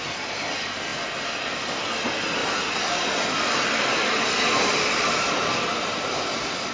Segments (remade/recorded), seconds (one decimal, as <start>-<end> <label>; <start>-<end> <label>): 0.0-2.4 recorded; 2.4-6.7 remade